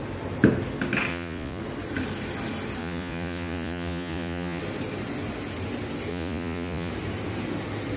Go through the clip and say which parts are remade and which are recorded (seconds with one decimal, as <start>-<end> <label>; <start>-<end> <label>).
0.0-1.1 recorded; 1.1-1.6 remade; 1.6-2.8 recorded; 2.8-4.6 remade; 4.6-6.1 recorded; 6.1-6.9 remade; 6.9-8.0 recorded